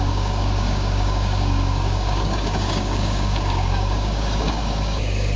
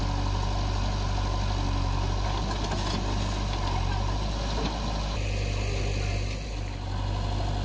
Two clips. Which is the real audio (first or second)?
second